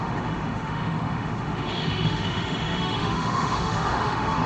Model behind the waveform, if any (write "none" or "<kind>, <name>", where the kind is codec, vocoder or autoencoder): autoencoder, DAC-VAE